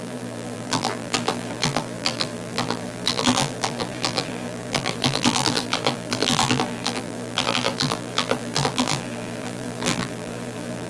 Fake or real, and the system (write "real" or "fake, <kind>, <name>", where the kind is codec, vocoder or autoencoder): fake, vocoder, BigVGAN v2